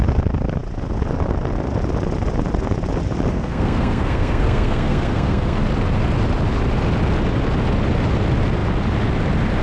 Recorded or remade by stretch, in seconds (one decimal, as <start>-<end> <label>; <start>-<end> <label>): 0.0-3.3 recorded; 3.3-5.6 remade; 5.6-9.6 recorded